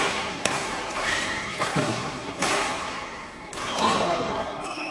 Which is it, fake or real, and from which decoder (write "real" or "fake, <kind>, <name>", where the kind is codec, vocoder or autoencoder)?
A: fake, codec, SNAC